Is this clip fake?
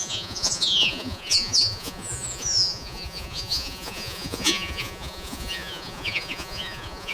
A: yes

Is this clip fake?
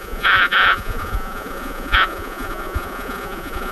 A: yes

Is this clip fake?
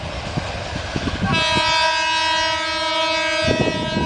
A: no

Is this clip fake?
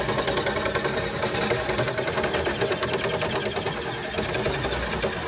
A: no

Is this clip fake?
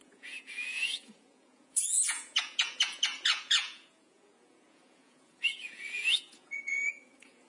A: yes